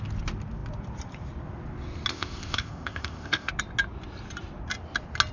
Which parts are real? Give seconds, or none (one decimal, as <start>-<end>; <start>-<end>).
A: 0.0-2.1; 3.5-5.3